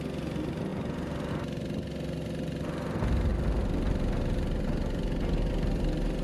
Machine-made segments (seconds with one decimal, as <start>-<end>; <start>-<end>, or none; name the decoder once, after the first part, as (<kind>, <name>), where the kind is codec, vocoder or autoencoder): none